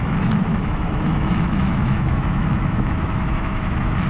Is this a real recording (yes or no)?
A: no